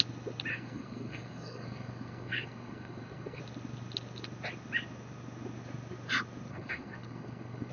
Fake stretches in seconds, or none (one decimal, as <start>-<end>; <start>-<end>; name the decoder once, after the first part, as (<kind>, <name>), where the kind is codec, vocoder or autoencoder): 0.5-3.4 (codec, SNAC); 6.5-7.7